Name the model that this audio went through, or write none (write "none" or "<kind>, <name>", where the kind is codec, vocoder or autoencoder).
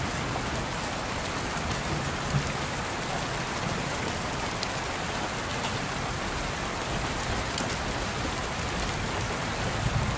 none